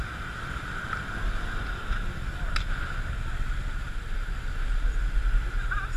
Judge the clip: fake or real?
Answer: real